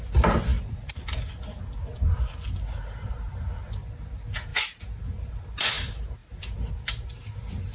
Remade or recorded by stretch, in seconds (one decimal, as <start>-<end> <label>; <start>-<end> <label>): 0.0-7.7 recorded